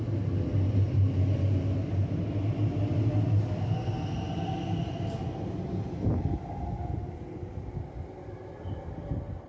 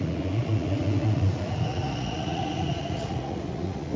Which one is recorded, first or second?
first